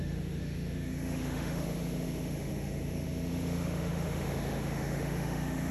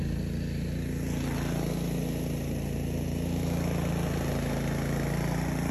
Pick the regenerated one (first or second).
first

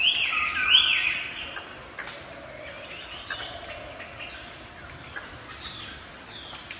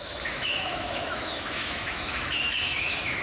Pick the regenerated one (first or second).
second